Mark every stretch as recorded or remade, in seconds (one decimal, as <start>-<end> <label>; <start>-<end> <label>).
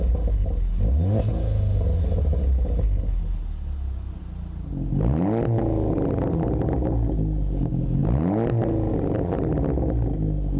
0.0-10.6 recorded